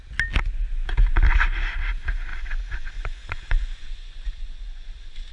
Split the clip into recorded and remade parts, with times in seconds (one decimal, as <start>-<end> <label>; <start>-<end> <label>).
0.0-2.3 recorded; 2.3-5.3 remade